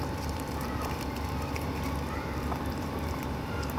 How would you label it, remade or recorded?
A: remade